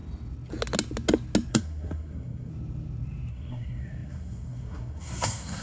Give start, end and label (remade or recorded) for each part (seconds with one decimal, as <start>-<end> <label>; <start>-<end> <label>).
0.0-1.5 recorded; 1.5-2.5 remade; 2.5-3.3 recorded; 3.3-5.6 remade